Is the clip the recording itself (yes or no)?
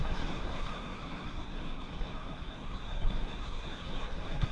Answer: no